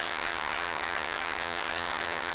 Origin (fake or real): fake